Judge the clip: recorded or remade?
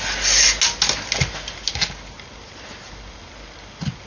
recorded